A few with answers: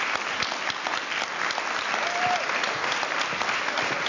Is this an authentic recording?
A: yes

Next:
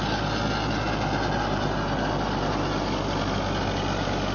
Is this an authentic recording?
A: yes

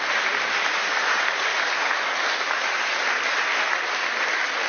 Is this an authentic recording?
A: yes